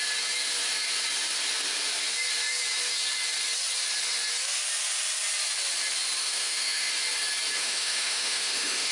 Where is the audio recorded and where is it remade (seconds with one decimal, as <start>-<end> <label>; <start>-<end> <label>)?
0.0-6.2 recorded; 6.2-6.9 remade; 6.9-7.6 recorded; 7.6-8.9 remade